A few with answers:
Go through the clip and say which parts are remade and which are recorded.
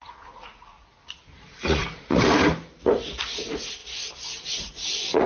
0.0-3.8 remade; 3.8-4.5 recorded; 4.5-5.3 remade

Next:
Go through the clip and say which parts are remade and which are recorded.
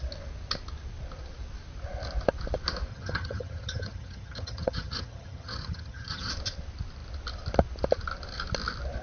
0.0-2.9 recorded; 2.9-6.3 remade; 6.3-9.0 recorded